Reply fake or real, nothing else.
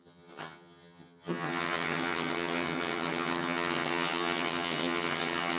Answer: fake